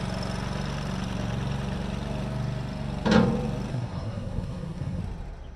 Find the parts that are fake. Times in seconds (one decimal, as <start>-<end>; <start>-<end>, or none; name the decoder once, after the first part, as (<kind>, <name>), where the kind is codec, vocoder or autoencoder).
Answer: 3.7-5.0 (codec, SNAC)